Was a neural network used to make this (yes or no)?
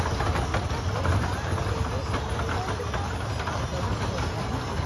no